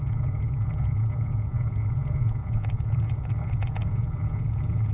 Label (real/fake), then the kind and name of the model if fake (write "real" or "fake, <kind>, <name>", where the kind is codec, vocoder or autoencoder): fake, vocoder, Vocos